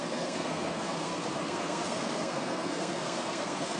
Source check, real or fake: fake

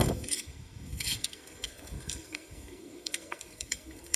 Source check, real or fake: fake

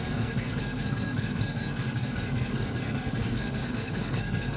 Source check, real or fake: fake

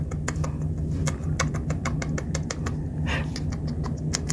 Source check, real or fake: real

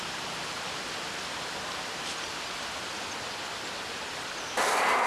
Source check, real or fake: real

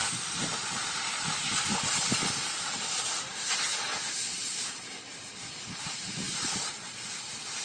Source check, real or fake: real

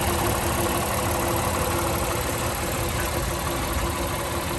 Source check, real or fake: real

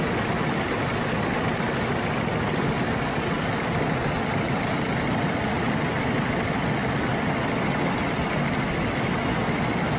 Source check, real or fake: real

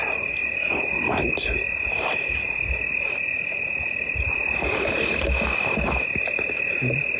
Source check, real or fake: real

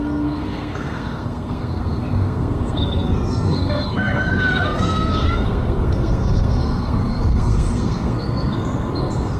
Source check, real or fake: fake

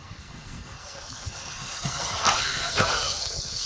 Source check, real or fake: fake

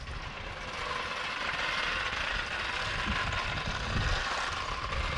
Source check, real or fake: real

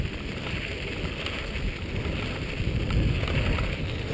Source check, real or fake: real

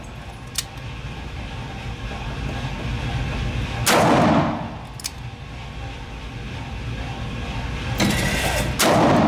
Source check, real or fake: real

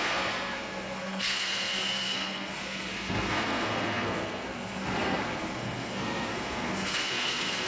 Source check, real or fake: fake